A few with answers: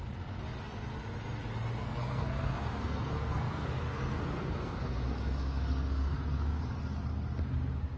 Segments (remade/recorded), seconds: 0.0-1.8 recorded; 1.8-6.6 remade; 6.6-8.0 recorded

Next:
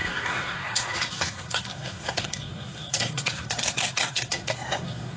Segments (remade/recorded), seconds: 0.0-5.2 remade

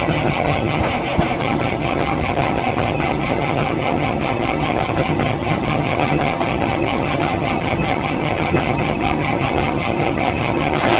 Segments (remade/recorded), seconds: 0.0-0.8 remade; 0.8-1.4 recorded; 1.4-11.0 remade

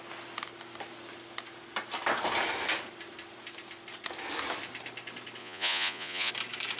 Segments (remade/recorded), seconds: 0.0-5.4 recorded; 5.4-6.3 remade; 6.3-6.8 recorded

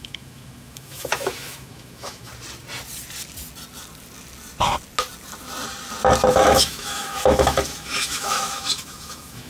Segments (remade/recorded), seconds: 0.0-2.3 remade; 2.3-6.3 recorded; 6.3-9.5 remade

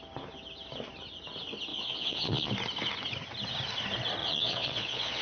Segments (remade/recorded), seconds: 0.0-1.7 recorded; 1.7-2.5 remade; 2.5-4.2 recorded; 4.2-5.2 remade